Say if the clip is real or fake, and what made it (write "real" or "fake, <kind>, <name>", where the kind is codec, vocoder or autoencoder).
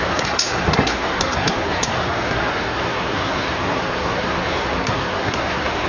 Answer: fake, codec, SNAC